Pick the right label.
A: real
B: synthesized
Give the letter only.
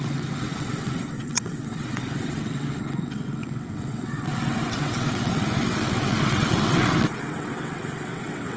B